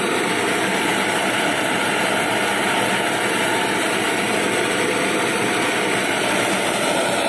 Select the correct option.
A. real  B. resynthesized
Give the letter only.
A